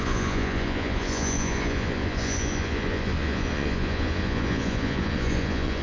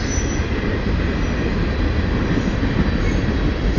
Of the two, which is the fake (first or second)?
first